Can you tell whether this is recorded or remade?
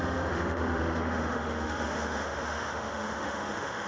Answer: remade